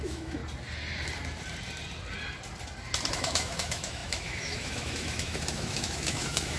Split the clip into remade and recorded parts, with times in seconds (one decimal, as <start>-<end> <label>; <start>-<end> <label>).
0.0-0.4 remade; 0.4-3.1 recorded; 3.1-6.6 remade